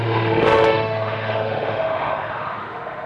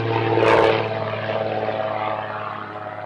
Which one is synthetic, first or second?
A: first